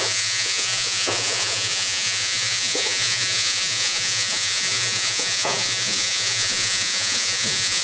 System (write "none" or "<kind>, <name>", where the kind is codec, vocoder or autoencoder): vocoder, Vocos